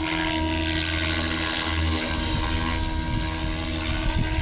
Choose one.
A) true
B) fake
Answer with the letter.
A